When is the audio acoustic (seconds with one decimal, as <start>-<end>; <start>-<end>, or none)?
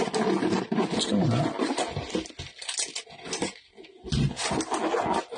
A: 0.0-5.4